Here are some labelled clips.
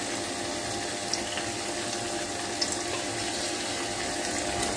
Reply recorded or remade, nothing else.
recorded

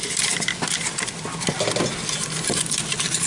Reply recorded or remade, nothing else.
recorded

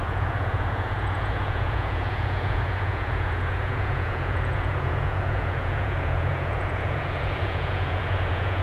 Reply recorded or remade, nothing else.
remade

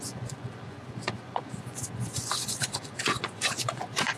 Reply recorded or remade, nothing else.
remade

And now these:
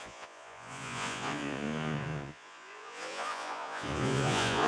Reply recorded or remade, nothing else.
remade